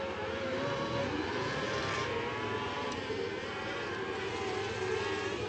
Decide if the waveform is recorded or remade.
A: recorded